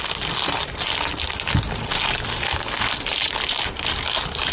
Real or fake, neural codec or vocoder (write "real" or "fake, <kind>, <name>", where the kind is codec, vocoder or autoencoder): real